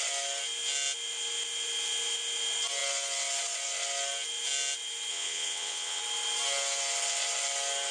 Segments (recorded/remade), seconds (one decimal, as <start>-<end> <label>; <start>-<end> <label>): 0.0-5.1 recorded; 5.1-6.0 remade; 6.0-7.9 recorded